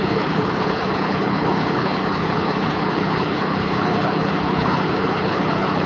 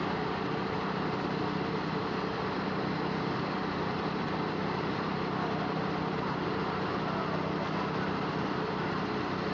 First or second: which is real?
second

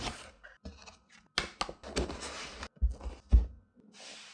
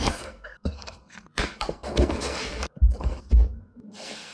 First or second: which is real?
first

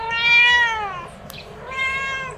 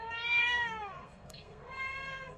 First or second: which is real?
first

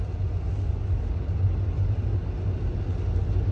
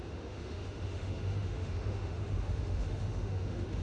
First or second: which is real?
first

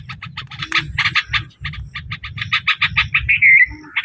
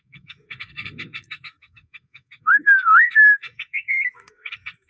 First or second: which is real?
first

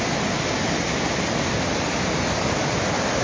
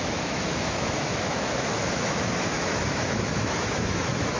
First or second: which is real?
first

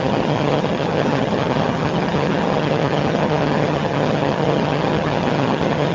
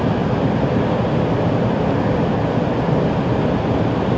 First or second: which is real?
second